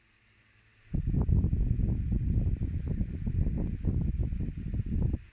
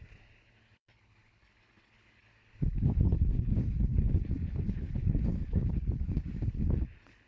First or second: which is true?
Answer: first